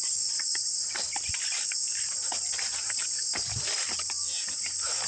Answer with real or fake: real